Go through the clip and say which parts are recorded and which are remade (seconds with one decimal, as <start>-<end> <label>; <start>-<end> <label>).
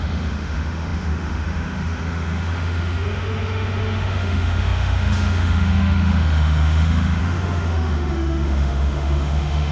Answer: 0.0-9.7 remade